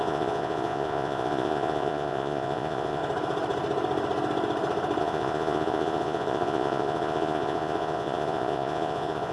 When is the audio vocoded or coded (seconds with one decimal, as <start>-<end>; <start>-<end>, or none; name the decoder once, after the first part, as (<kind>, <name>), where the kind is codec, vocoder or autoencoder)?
0.0-3.0 (vocoder, Vocos); 5.0-9.3